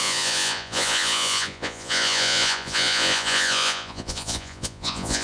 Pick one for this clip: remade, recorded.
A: remade